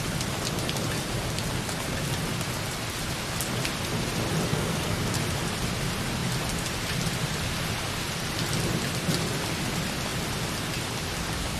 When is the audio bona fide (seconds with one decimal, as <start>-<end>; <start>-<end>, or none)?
0.0-4.5; 5.0-11.6